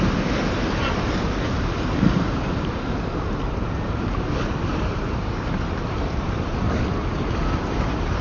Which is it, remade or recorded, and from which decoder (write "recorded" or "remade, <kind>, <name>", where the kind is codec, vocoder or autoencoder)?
remade, vocoder, BigVGAN v2